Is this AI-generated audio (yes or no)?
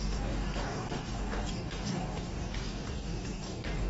yes